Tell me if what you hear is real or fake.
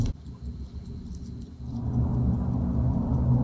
real